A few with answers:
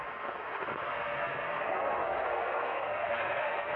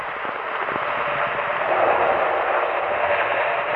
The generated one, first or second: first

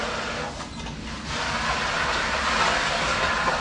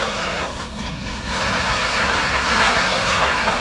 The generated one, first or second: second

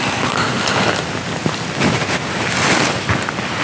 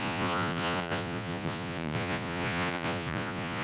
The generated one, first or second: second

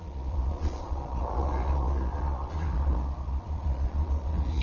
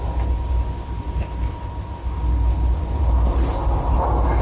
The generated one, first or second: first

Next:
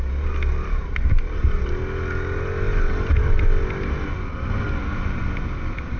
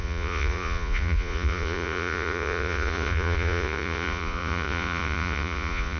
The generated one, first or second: second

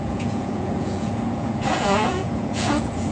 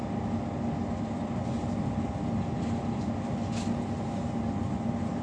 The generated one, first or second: first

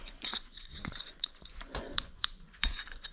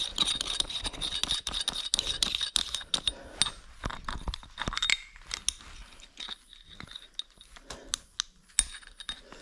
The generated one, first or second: first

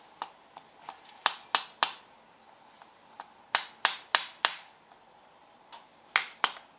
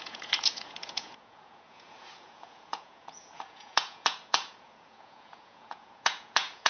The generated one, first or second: second